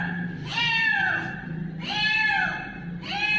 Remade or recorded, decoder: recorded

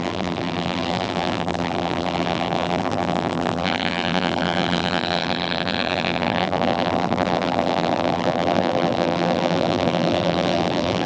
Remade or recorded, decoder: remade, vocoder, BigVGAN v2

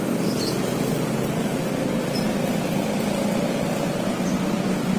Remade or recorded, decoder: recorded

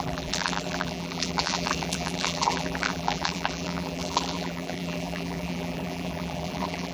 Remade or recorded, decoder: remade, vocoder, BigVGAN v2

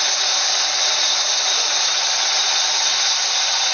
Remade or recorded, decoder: remade, vocoder, BigVGAN v2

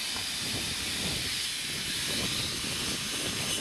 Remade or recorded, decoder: remade, vocoder, BigVGAN v2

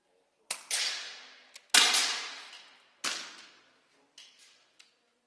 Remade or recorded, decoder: recorded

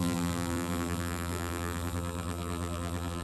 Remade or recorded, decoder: remade, vocoder, BigVGAN v2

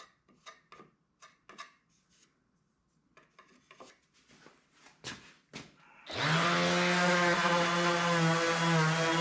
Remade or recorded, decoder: recorded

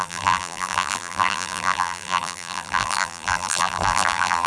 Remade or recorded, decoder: remade, vocoder, BigVGAN v2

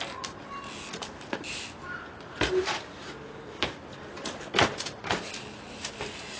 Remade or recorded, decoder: recorded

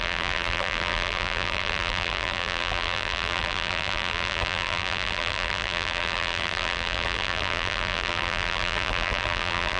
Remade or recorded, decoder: remade, vocoder, BigVGAN v2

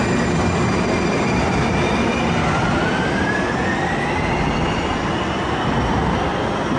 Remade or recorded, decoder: recorded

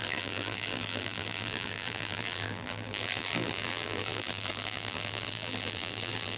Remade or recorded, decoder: remade, vocoder, BigVGAN v2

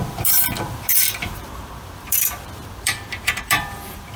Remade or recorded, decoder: remade, vocoder, BigVGAN v2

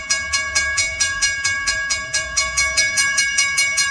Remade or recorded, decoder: remade, vocoder, BigVGAN v2